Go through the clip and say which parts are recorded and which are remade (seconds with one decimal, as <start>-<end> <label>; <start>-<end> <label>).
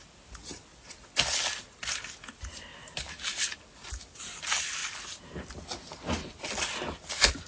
0.0-7.5 recorded